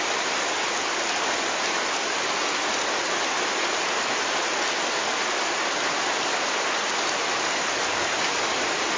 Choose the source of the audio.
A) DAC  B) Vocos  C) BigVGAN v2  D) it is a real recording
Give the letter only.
D